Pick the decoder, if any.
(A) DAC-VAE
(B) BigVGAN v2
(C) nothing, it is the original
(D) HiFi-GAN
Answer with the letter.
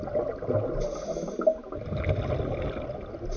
C